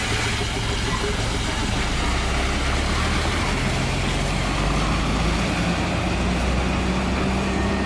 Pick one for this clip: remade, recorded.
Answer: recorded